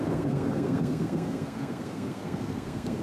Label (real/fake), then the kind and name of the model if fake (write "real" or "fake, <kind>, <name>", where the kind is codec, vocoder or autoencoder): fake, codec, SNAC